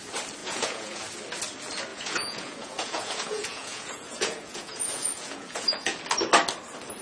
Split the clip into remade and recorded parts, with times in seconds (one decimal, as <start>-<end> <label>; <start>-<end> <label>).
0.0-0.4 recorded; 0.4-1.0 remade; 1.0-1.9 recorded; 1.9-6.0 remade; 6.0-7.0 recorded